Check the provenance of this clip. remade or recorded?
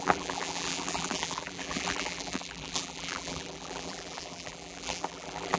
remade